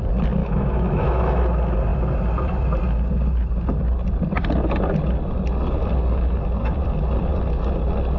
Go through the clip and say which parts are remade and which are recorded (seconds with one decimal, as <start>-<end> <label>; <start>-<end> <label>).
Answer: 0.0-0.4 recorded; 0.4-1.4 remade; 1.4-8.2 recorded